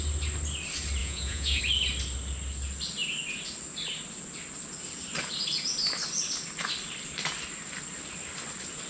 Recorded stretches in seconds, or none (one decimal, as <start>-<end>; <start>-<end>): 0.0-1.0; 1.6-8.9